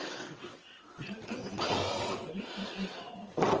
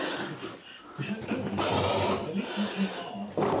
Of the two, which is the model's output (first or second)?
first